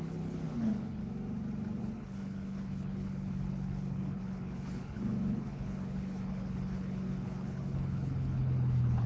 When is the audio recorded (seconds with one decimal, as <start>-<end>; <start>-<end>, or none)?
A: 1.0-1.8